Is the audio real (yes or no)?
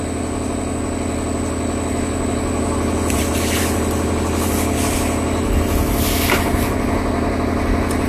yes